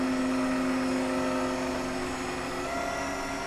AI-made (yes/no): no